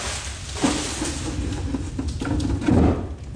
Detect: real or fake real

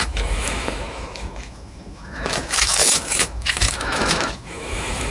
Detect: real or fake fake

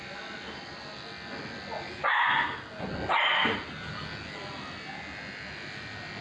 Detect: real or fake real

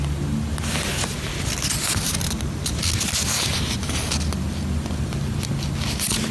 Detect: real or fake real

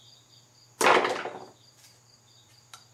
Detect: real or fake real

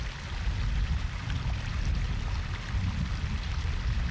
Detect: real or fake real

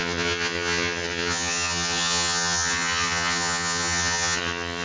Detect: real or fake fake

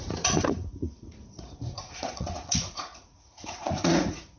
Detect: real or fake fake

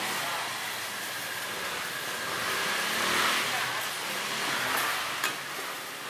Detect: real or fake real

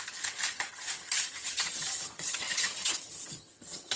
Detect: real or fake fake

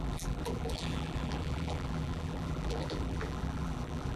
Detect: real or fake fake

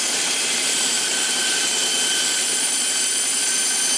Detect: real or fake real